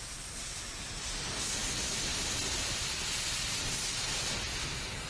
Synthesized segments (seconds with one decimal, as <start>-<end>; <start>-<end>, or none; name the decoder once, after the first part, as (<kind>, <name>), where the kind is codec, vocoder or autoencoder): none